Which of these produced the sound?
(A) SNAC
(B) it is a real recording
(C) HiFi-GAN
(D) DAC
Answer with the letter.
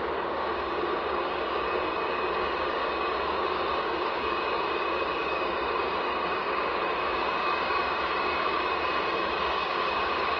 D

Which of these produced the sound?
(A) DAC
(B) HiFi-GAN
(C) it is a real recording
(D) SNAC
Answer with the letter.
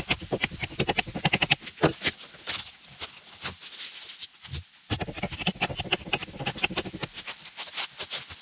C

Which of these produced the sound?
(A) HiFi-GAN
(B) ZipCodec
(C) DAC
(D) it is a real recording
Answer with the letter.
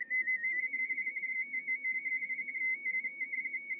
C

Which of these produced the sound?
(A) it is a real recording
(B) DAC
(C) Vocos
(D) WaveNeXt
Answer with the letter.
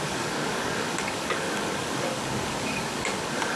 B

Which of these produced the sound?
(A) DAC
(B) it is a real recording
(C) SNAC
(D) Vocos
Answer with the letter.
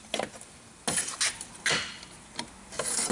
B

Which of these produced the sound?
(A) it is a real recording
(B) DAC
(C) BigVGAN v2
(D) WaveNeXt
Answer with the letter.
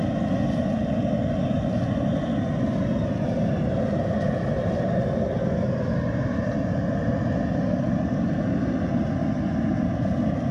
A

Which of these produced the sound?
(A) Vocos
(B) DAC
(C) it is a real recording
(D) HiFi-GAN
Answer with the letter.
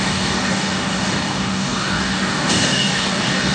B